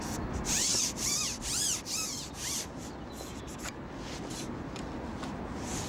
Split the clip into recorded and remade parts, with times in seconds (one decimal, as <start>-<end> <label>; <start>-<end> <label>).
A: 0.0-5.9 recorded